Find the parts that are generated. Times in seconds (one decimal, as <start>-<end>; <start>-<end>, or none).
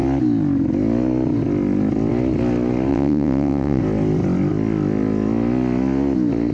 2.9-3.8